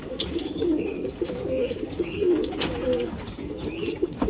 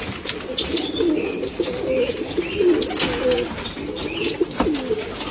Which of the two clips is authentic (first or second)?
second